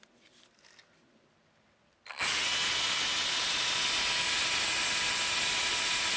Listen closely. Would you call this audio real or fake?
real